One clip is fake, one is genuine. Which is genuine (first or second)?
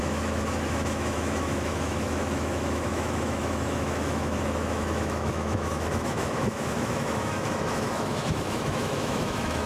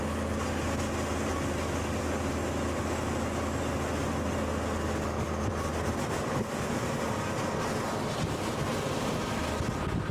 second